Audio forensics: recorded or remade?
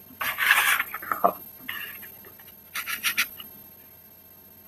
recorded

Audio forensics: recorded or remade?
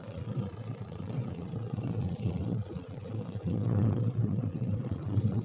remade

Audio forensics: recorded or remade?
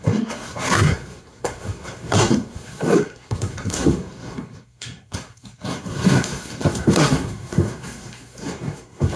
remade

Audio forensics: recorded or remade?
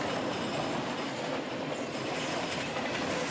recorded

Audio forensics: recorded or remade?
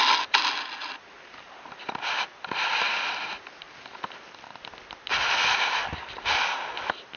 recorded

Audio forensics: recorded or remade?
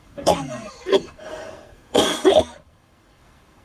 remade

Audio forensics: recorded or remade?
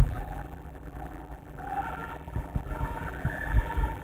remade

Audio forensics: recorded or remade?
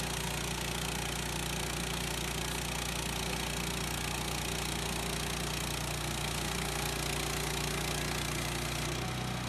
recorded